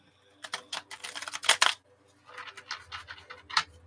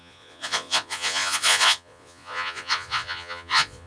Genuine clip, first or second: first